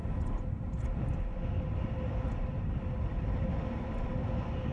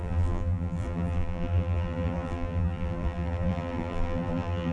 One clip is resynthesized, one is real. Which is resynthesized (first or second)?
second